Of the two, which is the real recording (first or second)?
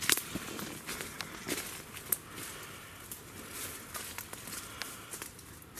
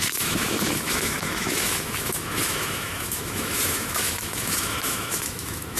first